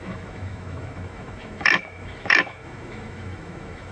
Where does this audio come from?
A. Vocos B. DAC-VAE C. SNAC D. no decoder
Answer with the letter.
B